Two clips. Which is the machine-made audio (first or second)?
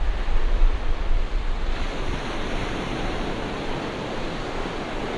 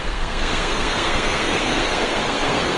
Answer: second